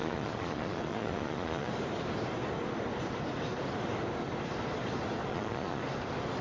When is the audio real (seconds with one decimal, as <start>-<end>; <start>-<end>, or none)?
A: 1.7-5.3; 5.8-6.4